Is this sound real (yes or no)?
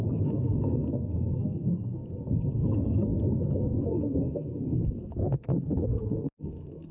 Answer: no